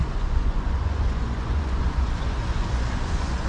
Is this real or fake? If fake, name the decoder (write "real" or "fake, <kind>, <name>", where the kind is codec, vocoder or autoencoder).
fake, vocoder, Vocos